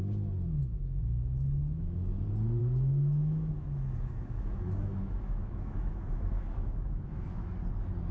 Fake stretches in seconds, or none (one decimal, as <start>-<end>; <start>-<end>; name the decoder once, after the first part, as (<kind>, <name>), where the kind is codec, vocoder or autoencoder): 0.6-2.2 (autoencoder, DAC-VAE); 2.6-7.5